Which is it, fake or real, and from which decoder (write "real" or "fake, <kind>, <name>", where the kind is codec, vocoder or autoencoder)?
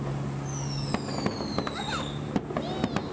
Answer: real